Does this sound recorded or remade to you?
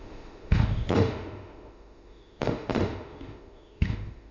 remade